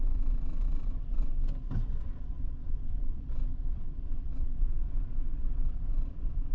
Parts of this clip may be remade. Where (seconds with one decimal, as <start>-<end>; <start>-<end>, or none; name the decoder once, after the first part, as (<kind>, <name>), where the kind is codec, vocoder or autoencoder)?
0.0-1.3 (vocoder, Vocos); 1.9-6.5

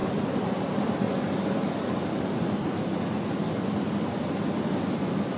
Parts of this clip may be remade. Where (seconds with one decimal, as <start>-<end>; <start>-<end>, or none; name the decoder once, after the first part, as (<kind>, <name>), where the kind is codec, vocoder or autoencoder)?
none